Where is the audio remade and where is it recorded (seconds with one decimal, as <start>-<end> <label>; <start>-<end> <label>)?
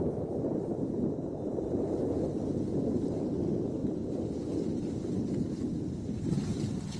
0.0-3.8 recorded; 3.8-5.5 remade; 5.5-7.0 recorded